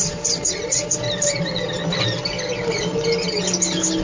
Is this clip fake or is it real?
real